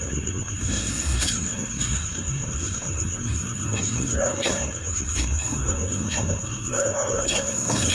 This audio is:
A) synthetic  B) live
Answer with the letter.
A